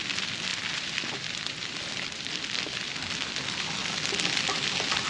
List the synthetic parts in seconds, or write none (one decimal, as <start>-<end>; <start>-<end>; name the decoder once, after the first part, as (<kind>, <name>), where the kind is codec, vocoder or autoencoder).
none